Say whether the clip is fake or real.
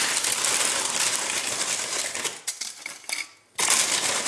real